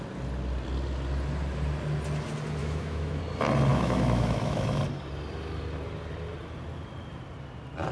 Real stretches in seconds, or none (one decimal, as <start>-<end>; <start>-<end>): 0.0-2.6; 3.2-3.7; 4.8-7.9